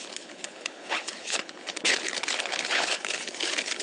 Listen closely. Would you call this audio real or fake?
fake